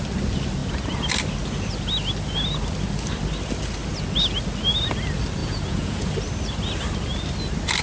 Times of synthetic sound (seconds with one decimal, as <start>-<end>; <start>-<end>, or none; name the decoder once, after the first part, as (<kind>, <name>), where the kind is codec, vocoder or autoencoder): 5.4-6.1 (vocoder, Vocos)